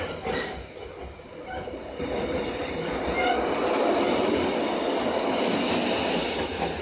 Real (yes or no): yes